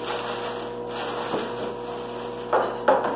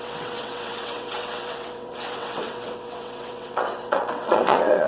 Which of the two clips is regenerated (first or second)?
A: second